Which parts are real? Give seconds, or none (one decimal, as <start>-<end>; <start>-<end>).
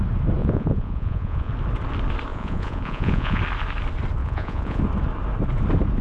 0.0-0.4; 1.5-2.3; 3.4-4.2; 4.8-6.0